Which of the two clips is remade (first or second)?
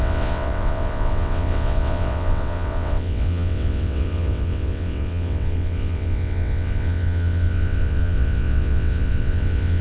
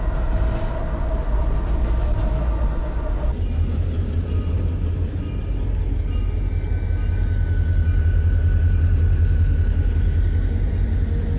first